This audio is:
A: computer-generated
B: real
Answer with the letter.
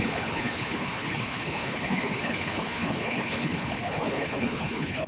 A